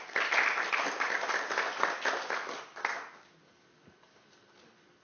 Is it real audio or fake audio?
real